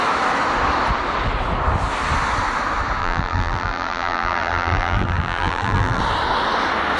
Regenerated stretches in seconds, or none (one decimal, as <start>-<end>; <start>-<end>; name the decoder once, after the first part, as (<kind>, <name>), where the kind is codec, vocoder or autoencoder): 3.0-6.0 (vocoder, BigVGAN v2)